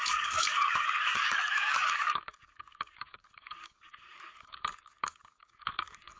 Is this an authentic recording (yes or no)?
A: no